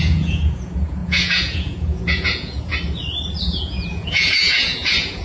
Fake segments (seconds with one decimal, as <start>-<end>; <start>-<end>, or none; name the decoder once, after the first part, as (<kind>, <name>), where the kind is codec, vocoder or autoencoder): 0.0-2.7 (vocoder, Vocos); 3.4-5.2